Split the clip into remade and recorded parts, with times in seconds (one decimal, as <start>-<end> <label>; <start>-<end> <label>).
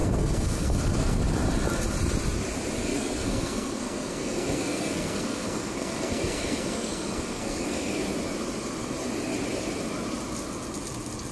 0.0-1.2 remade; 1.2-2.9 recorded; 2.9-8.0 remade; 8.0-11.3 recorded